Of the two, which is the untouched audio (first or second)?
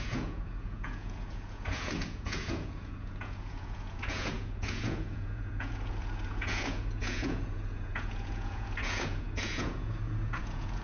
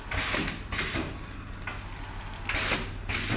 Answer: second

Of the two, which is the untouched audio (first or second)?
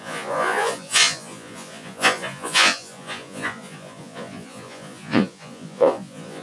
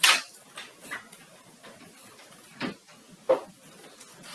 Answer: second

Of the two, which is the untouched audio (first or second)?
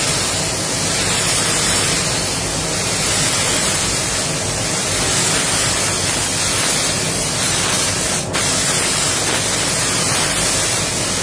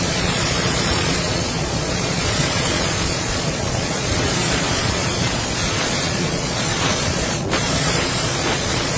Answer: first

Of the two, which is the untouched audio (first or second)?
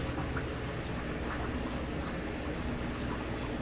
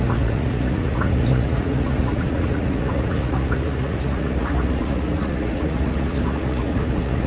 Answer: first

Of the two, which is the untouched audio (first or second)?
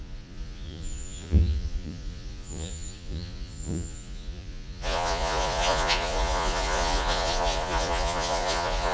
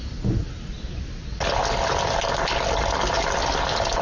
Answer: second